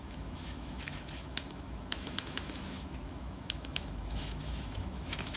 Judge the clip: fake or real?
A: fake